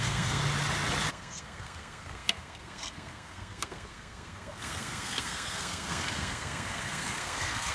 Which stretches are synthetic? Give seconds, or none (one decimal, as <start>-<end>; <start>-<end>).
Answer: 0.0-0.4; 1.1-7.7